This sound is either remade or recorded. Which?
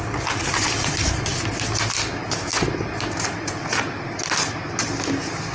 recorded